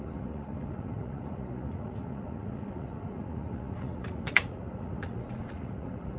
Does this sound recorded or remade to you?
remade